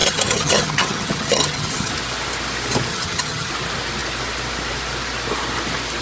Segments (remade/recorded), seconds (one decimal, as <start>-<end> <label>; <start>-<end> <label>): 0.0-1.9 remade; 1.9-2.9 recorded; 2.9-3.5 remade; 3.5-6.0 recorded